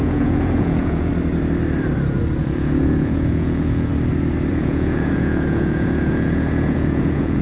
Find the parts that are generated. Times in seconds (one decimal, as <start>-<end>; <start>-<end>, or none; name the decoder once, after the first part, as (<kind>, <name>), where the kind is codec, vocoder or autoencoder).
0.0-1.1 (vocoder, Vocos); 2.4-3.9; 4.5-7.4